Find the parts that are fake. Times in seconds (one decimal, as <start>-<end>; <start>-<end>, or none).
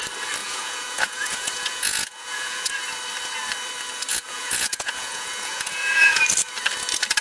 0.4-2.7; 4.1-6.2